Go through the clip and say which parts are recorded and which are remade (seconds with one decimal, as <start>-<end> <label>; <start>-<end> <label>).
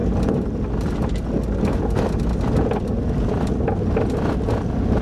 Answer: 0.0-5.0 recorded